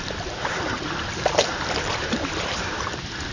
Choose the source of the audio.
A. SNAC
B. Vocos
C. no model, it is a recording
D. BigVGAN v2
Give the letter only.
D